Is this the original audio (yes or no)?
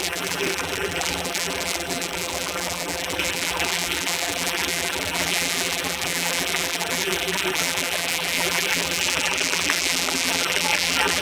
no